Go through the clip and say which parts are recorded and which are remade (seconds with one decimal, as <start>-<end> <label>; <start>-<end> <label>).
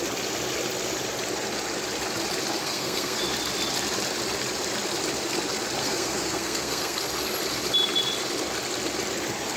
0.0-2.6 recorded; 2.6-3.2 remade; 3.2-5.8 recorded; 5.8-7.0 remade; 7.0-9.6 recorded